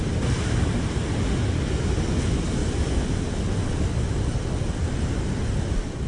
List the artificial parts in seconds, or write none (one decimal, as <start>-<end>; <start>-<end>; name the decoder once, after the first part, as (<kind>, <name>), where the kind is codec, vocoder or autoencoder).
none